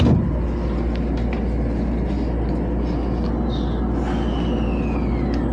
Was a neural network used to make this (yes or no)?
no